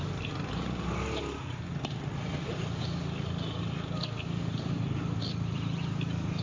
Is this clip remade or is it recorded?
recorded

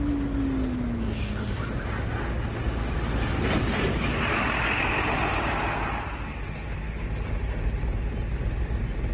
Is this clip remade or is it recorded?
recorded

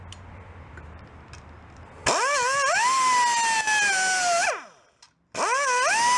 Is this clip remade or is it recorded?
recorded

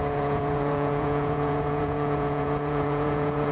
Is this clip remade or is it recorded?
remade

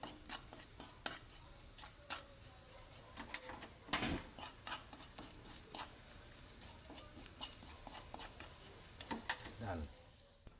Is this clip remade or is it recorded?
recorded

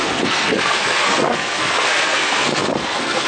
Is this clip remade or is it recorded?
remade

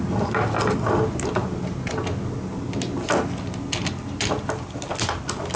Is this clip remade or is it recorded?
recorded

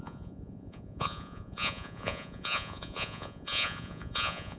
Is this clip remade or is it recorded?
remade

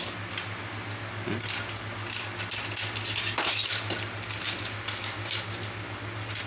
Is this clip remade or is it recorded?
recorded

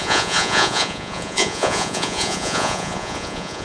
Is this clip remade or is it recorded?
remade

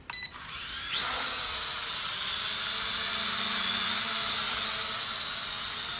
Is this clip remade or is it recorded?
recorded